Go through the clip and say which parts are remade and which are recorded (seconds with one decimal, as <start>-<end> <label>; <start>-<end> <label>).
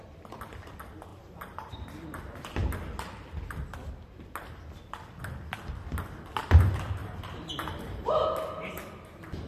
0.0-1.1 recorded; 1.1-1.7 remade; 1.7-7.0 recorded; 7.0-8.1 remade; 8.1-9.5 recorded